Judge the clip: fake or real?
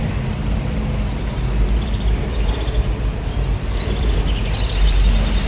real